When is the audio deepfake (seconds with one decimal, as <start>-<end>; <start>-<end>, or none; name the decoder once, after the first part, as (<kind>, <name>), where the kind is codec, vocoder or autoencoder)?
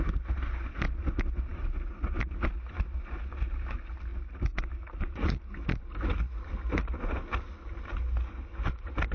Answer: none